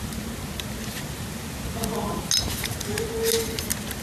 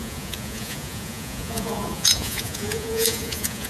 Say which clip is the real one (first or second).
first